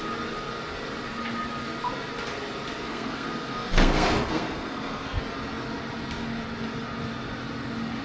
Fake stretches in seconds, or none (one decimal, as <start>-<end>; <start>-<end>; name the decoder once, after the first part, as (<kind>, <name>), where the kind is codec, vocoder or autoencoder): 2.9-5.2 (codec, SNAC)